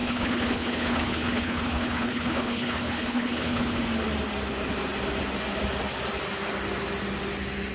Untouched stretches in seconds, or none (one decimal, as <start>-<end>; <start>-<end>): 3.8-7.7